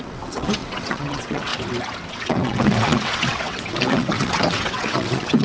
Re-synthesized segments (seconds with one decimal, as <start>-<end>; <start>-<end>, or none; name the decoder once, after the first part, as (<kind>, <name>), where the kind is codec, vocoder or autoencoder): 0.0-1.5 (vocoder, WaveNeXt); 2.1-5.4